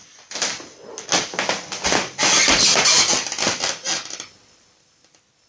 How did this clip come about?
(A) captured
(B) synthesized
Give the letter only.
A